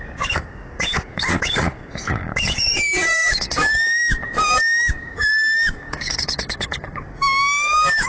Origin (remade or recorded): remade